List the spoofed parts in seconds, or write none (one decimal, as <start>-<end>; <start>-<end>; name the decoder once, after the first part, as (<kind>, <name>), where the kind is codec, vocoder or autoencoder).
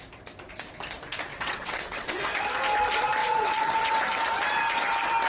1.3-2.2 (vocoder, WaveNeXt); 3.2-4.0